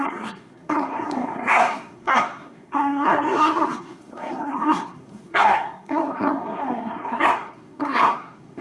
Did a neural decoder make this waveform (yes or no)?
yes